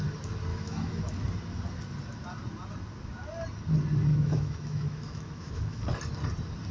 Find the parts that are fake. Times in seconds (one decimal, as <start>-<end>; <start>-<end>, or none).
0.5-1.0; 4.1-5.8